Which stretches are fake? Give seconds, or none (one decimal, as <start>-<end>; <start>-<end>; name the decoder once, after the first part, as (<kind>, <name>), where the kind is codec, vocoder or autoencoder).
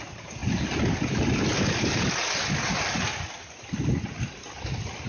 none